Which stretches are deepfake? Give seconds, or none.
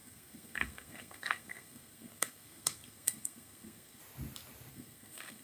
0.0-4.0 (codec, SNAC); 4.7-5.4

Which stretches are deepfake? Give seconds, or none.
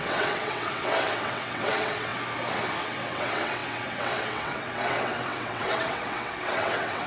0.0-2.1 (vocoder, WaveNeXt); 2.8-7.1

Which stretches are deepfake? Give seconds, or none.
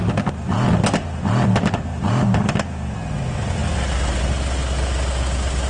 none